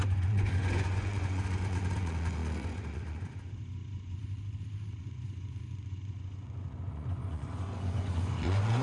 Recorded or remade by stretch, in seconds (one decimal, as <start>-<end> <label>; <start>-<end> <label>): 0.0-4.2 remade; 4.2-5.0 recorded; 5.0-8.8 remade